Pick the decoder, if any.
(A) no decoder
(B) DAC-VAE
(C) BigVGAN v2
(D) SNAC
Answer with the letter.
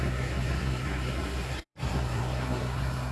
D